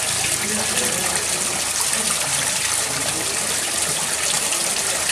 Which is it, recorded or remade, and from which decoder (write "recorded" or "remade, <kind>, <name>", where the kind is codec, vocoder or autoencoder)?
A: recorded